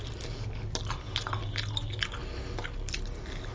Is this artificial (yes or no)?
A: no